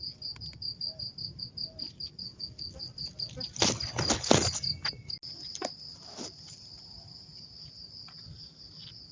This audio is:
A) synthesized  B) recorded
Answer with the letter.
B